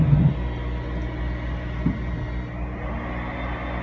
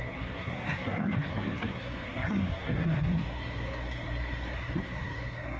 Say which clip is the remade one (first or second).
second